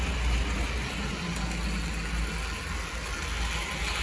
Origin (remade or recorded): recorded